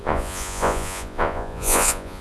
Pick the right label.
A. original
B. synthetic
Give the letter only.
B